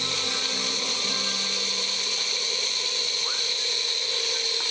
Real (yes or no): yes